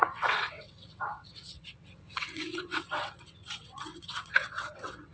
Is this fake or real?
fake